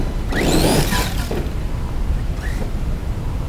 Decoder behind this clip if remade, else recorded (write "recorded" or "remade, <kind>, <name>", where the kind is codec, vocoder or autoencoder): remade, vocoder, BigVGAN v2